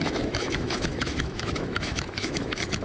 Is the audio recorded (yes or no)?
no